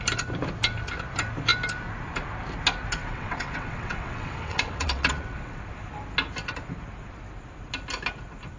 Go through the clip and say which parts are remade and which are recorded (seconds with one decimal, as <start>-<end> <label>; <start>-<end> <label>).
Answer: 0.0-3.0 recorded; 3.0-5.6 remade; 5.6-8.6 recorded